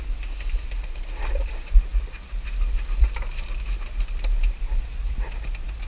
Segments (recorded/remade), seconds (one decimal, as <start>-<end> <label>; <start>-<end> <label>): 0.0-5.9 recorded

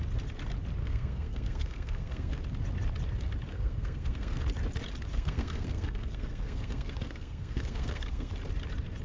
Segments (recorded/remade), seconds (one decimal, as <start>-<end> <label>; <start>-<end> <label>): 0.0-0.8 recorded; 0.8-2.3 remade; 2.3-3.5 recorded; 3.5-4.4 remade; 4.4-5.1 recorded; 5.1-8.3 remade; 8.3-9.0 recorded

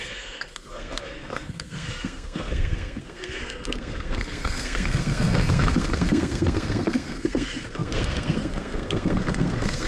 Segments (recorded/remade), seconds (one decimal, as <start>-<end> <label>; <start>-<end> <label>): 0.0-9.9 remade

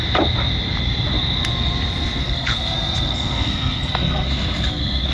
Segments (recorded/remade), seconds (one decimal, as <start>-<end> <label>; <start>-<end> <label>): 0.0-2.2 recorded; 2.2-5.1 remade